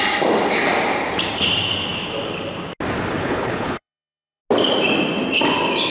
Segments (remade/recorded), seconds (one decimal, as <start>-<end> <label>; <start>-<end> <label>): 0.0-3.2 recorded; 3.2-4.4 remade; 4.4-5.9 recorded